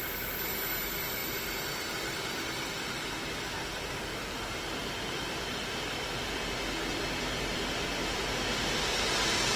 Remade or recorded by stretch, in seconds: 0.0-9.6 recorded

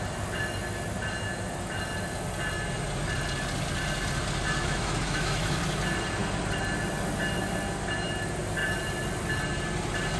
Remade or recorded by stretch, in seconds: 0.0-4.6 recorded; 4.6-5.6 remade; 5.6-10.2 recorded